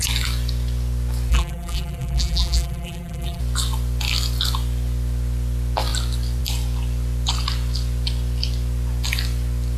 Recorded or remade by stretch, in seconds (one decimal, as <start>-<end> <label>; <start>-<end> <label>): 0.0-1.3 recorded; 1.3-3.4 remade; 3.4-9.8 recorded